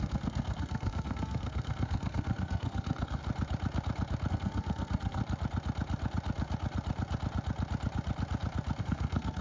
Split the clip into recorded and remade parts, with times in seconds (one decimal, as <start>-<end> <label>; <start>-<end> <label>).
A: 0.0-3.2 remade; 3.2-4.3 recorded; 4.3-5.2 remade; 5.2-8.8 recorded; 8.8-9.4 remade

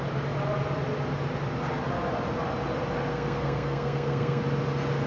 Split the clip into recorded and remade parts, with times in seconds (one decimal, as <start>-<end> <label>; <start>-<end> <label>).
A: 0.0-3.1 recorded; 3.1-4.4 remade; 4.4-5.1 recorded

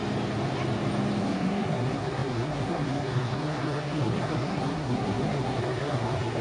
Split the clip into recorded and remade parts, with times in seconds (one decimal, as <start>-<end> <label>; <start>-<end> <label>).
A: 0.0-1.2 recorded; 1.2-6.4 remade

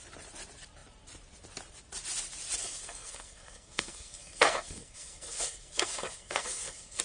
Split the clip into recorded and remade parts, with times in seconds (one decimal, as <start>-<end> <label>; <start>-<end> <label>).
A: 0.0-2.6 recorded; 2.6-7.0 remade

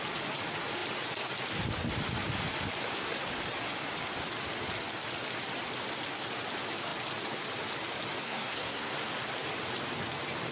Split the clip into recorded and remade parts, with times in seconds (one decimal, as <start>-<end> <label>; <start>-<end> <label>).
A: 0.0-8.2 recorded; 8.2-8.9 remade; 8.9-10.5 recorded

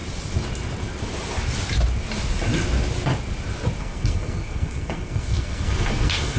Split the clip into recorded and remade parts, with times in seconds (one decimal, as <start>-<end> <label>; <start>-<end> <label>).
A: 0.0-3.8 recorded; 3.8-6.4 remade

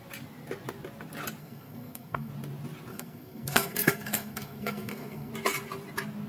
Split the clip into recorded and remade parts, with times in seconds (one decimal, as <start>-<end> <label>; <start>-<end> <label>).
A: 0.0-1.4 recorded; 1.4-2.3 remade; 2.3-2.9 recorded; 2.9-5.3 remade; 5.3-6.3 recorded

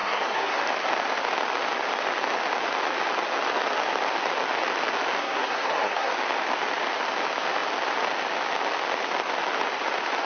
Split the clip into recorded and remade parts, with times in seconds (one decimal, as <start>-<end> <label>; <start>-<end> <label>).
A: 0.0-0.6 remade; 0.6-5.2 recorded; 5.2-6.1 remade; 6.1-10.3 recorded